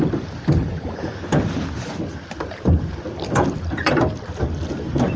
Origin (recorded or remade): remade